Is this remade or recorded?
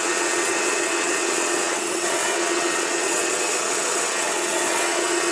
remade